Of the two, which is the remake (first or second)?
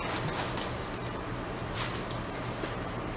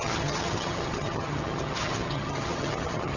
second